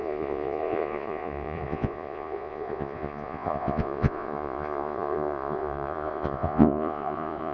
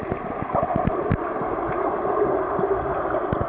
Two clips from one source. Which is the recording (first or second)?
second